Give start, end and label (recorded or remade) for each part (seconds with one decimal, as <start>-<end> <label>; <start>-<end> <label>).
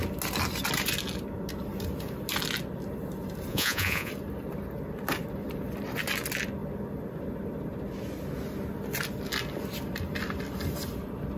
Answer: 0.0-3.5 recorded; 3.5-4.1 remade; 4.1-11.4 recorded